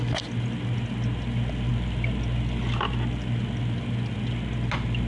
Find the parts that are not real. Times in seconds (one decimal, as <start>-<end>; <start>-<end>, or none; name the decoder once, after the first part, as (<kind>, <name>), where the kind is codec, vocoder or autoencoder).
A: none